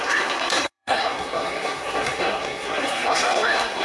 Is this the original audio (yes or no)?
no